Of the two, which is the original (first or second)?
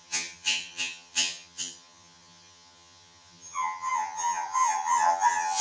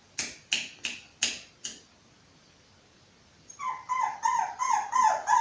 second